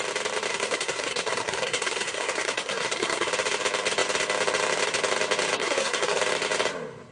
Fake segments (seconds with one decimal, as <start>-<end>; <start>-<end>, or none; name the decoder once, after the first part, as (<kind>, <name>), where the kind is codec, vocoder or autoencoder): 0.5-3.3 (codec, SNAC); 5.6-6.2